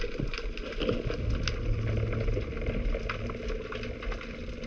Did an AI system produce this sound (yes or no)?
no